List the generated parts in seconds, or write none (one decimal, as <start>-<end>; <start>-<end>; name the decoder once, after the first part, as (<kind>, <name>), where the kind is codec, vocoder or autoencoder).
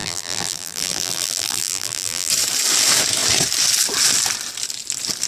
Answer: 0.0-2.3 (vocoder, BigVGAN v2)